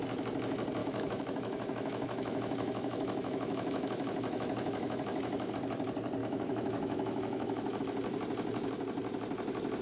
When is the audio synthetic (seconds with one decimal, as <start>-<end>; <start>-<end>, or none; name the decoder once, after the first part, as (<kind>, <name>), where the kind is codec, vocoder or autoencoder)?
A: 0.8-5.5 (autoencoder, DAC-VAE); 6.2-7.8